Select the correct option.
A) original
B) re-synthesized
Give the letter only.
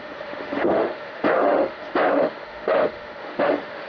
B